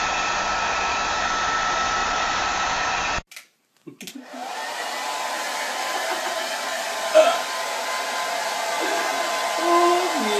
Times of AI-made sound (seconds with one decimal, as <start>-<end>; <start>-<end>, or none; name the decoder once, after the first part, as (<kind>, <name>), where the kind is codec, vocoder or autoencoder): 2.0-2.9 (vocoder, BigVGAN v2)